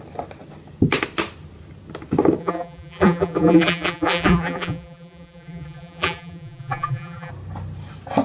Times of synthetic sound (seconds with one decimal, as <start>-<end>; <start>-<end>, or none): 2.4-7.3